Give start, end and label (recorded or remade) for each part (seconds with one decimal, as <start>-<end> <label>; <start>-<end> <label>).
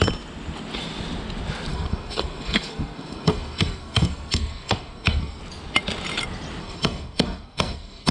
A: 0.0-1.7 recorded; 1.7-5.4 remade; 5.4-6.6 recorded; 6.6-8.1 remade